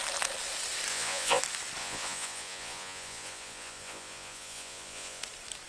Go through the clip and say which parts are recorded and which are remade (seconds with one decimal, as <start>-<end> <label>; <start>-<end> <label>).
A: 0.0-0.9 recorded; 0.9-1.4 remade; 1.4-1.8 recorded; 1.8-5.2 remade; 5.2-5.7 recorded